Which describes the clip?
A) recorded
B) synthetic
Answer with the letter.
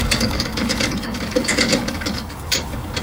B